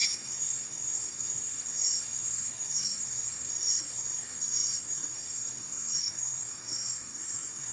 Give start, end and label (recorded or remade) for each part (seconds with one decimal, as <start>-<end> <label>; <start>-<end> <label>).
0.0-7.7 remade